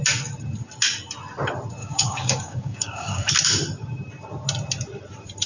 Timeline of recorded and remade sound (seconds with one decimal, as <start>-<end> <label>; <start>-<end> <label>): 0.0-1.8 recorded; 1.8-3.3 remade; 3.3-5.5 recorded